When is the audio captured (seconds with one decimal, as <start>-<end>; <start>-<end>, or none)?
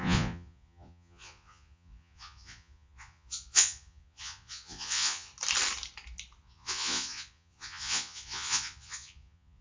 5.3-6.4